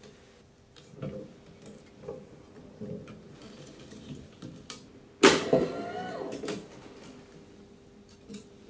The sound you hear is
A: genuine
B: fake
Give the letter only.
A